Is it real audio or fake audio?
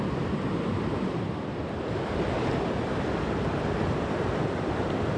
fake